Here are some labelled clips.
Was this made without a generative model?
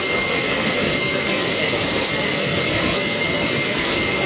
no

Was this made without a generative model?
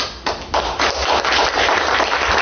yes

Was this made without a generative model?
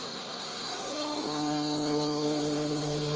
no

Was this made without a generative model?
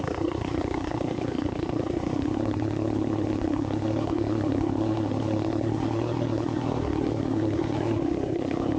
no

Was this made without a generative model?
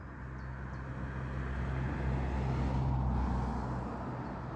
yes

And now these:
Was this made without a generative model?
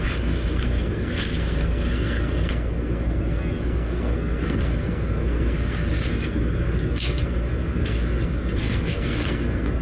no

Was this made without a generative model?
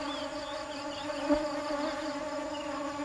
yes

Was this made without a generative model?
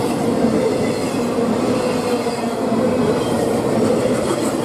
yes